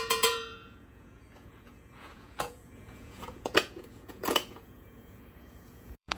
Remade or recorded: remade